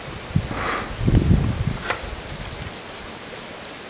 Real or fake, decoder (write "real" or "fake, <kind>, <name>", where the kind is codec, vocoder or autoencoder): real